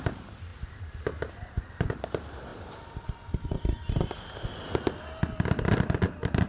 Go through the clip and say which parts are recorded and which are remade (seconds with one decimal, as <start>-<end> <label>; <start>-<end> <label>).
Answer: 0.0-6.5 recorded